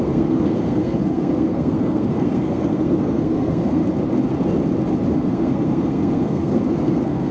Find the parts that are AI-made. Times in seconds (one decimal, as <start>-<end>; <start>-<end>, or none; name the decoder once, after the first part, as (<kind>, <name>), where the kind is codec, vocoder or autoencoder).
0.0-3.8 (codec, SNAC); 5.1-7.3